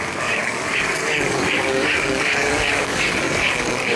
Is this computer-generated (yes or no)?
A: yes